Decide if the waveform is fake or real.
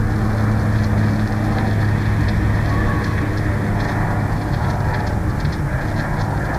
real